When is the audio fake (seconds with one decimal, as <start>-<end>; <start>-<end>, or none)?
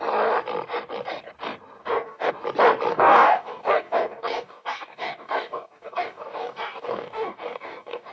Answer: 1.8-2.3; 2.9-8.1